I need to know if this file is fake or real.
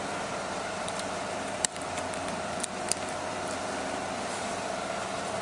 fake